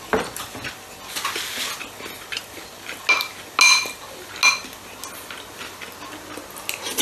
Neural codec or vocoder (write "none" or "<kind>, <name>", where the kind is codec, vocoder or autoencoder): none